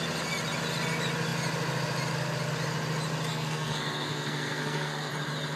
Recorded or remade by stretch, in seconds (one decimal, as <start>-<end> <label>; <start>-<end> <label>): 0.0-3.3 recorded; 3.3-5.1 remade; 5.1-5.6 recorded